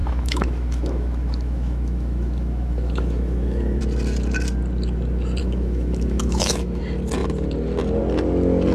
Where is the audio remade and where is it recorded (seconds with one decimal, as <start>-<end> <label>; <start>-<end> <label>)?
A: 0.0-3.8 remade; 3.8-5.4 recorded; 5.4-6.8 remade; 6.8-8.7 recorded